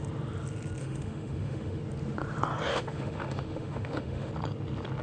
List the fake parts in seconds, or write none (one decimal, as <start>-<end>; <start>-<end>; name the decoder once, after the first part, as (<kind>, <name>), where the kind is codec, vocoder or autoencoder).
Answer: 0.8-1.8 (autoencoder, DAC-VAE); 2.7-4.3